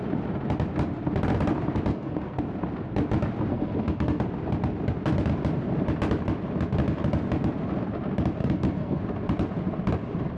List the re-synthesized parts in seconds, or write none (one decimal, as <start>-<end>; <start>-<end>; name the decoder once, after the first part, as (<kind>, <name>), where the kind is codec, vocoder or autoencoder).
1.9-2.4 (codec, SNAC); 3.5-4.2; 8.4-9.0